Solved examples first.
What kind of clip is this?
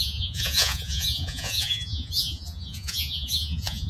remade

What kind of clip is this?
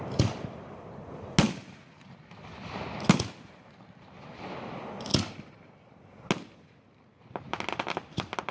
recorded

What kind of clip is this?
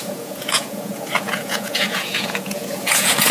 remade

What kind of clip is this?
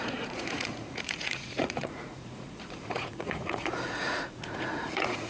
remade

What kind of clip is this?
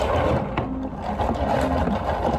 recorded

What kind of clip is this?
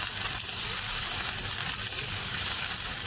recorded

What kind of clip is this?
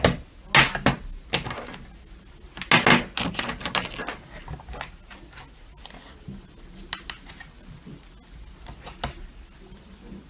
recorded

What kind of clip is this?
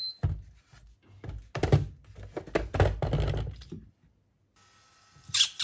recorded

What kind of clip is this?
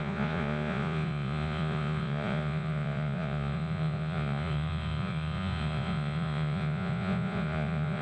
remade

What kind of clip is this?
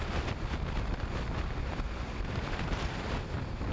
recorded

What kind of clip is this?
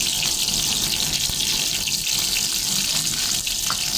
recorded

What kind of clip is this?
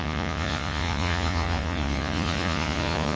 remade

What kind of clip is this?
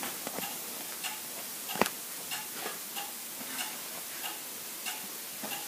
recorded